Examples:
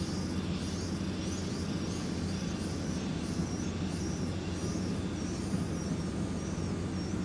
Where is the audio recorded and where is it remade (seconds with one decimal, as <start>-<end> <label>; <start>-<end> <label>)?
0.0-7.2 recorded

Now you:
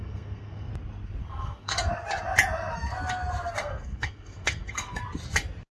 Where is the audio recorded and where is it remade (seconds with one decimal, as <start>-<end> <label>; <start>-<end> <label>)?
0.0-0.7 remade; 0.7-1.2 recorded; 1.2-1.8 remade; 1.8-3.6 recorded; 3.6-5.0 remade; 5.0-5.8 recorded

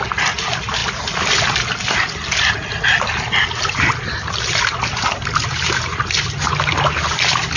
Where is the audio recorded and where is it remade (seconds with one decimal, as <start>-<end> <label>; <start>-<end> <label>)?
0.0-7.6 recorded

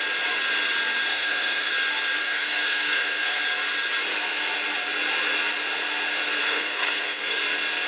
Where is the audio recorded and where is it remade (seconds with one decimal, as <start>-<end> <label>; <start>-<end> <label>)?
0.0-1.1 recorded; 1.1-1.7 remade; 1.7-2.2 recorded; 2.2-3.4 remade; 3.4-6.4 recorded; 6.4-7.4 remade; 7.4-7.9 recorded

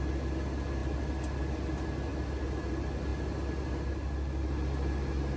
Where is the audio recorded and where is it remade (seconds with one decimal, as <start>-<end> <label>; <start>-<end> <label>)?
0.0-5.4 recorded

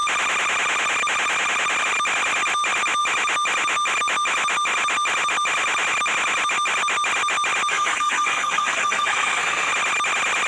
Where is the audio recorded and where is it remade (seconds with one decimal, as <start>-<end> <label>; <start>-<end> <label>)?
0.0-7.7 recorded; 7.7-9.7 remade; 9.7-10.5 recorded